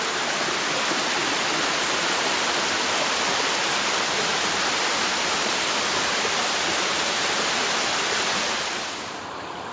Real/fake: real